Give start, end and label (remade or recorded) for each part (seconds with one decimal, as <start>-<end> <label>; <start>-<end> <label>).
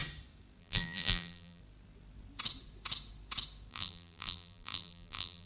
0.0-0.6 recorded; 0.6-1.6 remade; 1.6-3.7 recorded; 3.7-5.5 remade